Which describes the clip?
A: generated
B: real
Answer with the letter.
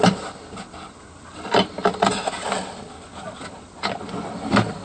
B